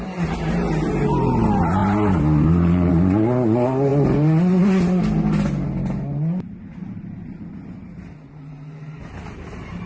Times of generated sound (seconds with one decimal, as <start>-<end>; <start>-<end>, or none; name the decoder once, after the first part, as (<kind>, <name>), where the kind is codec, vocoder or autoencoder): none